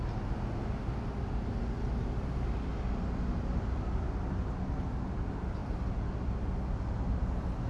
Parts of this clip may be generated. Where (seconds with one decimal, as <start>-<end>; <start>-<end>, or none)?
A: none